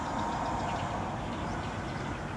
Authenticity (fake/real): real